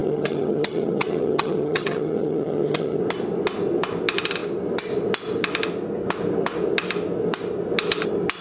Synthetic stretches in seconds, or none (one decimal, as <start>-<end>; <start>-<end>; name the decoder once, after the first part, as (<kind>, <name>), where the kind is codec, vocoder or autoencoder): 0.0-3.0 (vocoder, HiFi-GAN)